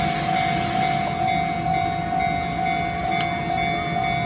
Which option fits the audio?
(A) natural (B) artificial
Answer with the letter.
A